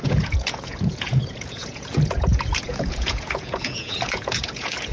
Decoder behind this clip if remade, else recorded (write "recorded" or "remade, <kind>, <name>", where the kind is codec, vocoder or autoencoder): remade, vocoder, Vocos